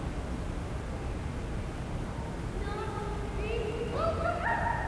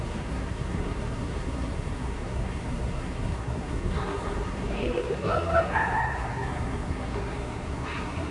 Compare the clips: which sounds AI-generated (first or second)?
second